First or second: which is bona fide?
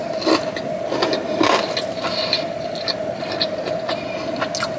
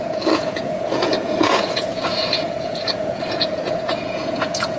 first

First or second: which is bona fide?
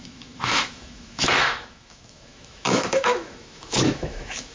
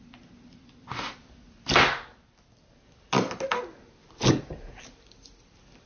second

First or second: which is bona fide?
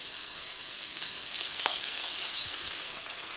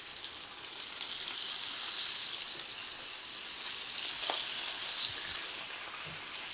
second